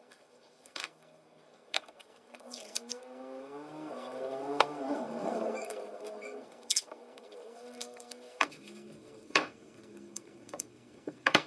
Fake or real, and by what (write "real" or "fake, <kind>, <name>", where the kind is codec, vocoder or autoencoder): fake, codec, SNAC